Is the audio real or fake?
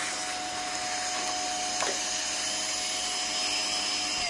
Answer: real